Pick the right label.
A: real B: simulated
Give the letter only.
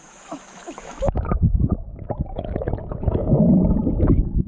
B